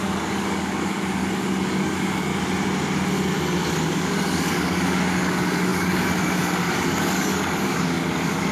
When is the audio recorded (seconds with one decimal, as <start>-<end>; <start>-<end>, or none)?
2.3-3.7